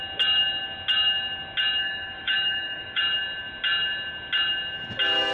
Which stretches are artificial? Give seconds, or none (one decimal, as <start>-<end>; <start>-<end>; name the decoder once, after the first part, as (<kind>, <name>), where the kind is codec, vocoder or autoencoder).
1.8-3.0 (autoencoder, DAC-VAE)